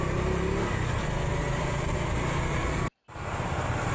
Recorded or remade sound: recorded